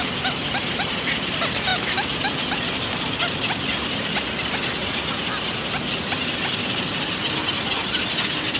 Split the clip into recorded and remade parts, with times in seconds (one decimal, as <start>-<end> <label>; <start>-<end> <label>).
0.0-8.6 recorded